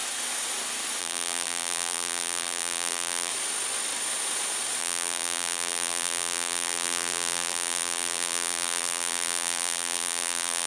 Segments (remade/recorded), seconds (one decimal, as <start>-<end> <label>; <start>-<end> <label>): 0.0-1.0 recorded; 1.0-3.3 remade; 3.3-4.8 recorded; 4.8-10.7 remade